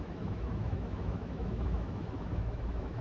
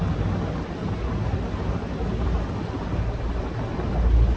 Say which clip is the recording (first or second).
second